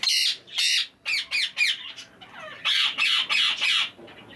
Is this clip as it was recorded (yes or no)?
yes